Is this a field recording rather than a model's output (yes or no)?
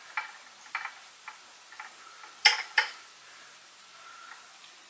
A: yes